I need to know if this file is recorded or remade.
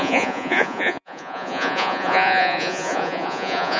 remade